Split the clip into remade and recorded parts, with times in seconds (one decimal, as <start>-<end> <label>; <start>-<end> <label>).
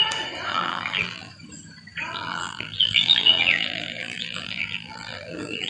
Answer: 0.0-0.5 recorded; 0.5-1.3 remade; 1.3-2.1 recorded; 2.1-5.7 remade